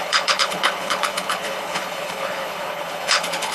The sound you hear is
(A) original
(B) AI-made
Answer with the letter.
B